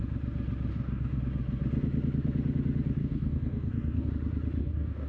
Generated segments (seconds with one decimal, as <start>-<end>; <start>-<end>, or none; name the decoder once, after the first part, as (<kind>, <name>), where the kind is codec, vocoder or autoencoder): 0.7-1.2 (codec, DAC); 3.0-4.1; 4.6-5.1